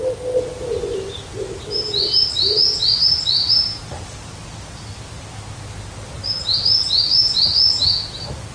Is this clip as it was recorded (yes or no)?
yes